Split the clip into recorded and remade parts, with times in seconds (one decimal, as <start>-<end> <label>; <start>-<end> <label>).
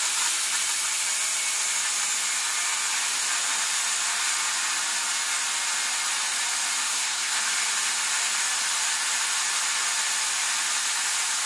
0.0-6.9 recorded; 6.9-7.4 remade; 7.4-11.5 recorded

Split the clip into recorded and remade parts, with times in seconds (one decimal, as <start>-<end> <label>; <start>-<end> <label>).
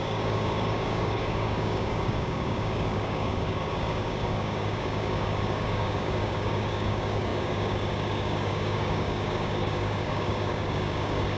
0.0-11.4 remade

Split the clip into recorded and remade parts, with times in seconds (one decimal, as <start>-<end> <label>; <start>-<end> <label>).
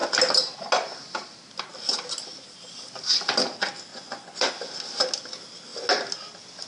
0.0-3.9 recorded; 3.9-4.5 remade; 4.5-6.7 recorded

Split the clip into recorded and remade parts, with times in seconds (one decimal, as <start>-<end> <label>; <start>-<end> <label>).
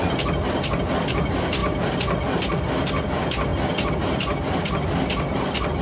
0.0-5.8 recorded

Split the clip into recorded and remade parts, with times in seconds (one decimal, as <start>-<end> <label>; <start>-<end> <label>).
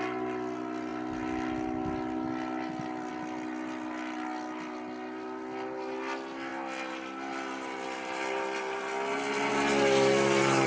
0.0-10.7 recorded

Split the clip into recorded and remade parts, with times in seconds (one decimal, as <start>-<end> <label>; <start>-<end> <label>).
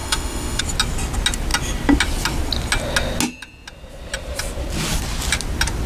0.0-0.6 remade; 0.6-5.9 recorded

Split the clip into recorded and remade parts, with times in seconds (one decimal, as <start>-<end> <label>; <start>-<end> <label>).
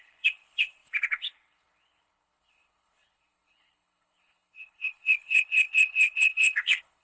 0.0-7.0 remade